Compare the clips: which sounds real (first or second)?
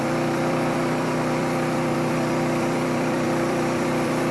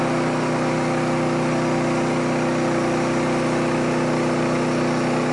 second